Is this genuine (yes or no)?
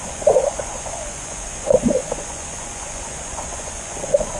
no